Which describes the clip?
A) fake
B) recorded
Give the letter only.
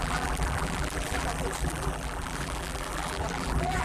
A